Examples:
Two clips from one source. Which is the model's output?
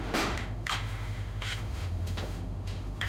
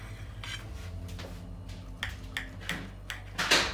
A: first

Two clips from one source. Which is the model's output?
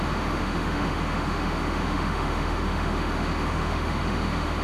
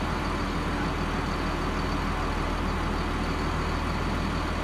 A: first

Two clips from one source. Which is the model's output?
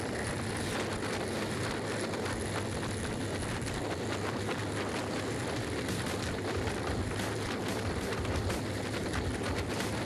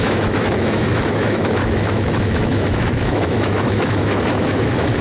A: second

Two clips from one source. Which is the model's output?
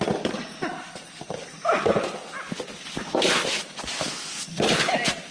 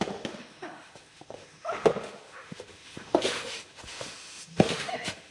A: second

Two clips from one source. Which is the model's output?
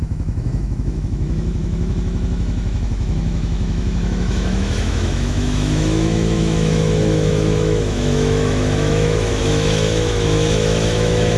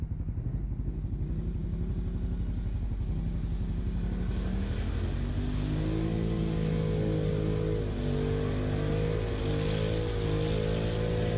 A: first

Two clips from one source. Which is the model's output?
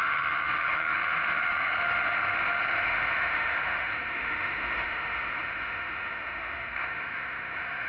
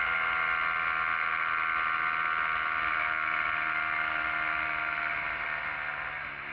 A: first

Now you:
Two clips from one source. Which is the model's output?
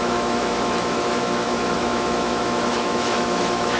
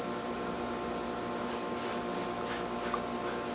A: first